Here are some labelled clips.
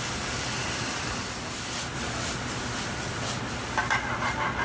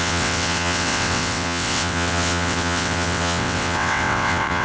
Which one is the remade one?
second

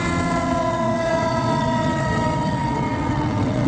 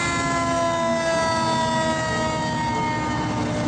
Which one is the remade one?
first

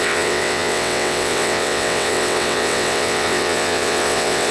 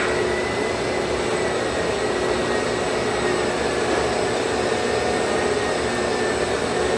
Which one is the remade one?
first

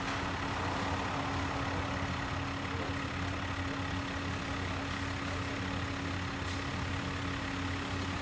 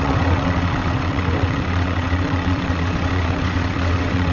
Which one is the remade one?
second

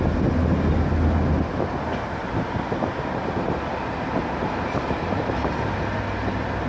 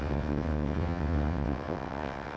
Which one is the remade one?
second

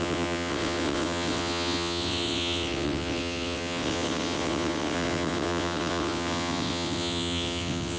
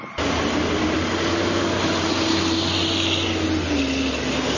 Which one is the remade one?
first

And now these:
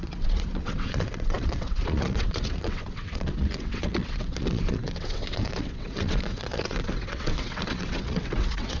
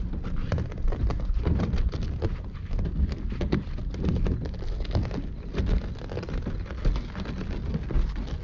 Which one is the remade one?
first